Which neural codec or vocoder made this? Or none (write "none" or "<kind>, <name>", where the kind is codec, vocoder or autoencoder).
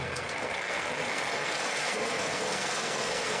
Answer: codec, SNAC